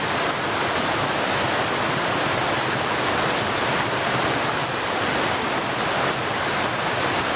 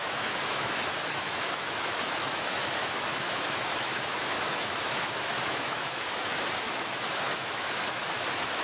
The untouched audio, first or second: first